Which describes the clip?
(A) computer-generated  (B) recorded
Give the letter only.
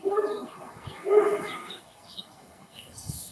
A